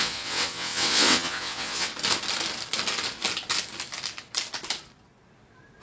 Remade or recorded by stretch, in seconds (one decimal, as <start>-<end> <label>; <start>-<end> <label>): 0.0-1.9 remade; 1.9-5.8 recorded